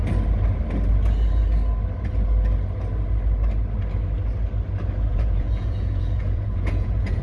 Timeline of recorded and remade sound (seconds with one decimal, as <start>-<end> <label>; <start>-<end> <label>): 0.0-5.1 recorded; 5.1-7.2 remade